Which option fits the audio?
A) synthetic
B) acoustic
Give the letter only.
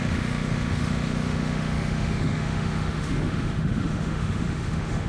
A